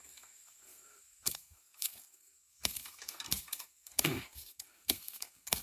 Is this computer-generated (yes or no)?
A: yes